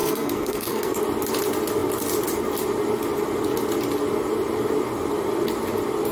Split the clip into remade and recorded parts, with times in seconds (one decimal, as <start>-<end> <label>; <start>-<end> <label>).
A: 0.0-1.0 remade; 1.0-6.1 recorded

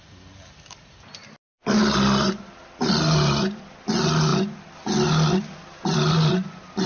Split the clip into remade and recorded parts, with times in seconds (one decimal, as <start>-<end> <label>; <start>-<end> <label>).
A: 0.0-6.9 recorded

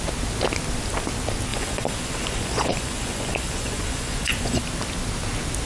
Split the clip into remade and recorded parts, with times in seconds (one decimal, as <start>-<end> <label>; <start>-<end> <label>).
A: 0.0-1.5 recorded; 1.5-4.6 remade; 4.6-5.7 recorded

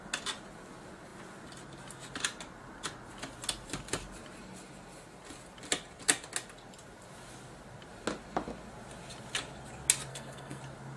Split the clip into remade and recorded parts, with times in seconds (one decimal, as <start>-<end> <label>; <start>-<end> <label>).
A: 0.0-10.1 recorded; 10.1-10.6 remade; 10.6-11.0 recorded

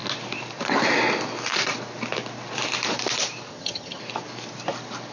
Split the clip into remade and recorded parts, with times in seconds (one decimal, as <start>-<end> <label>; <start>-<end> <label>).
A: 0.0-3.5 recorded; 3.5-4.0 remade; 4.0-5.1 recorded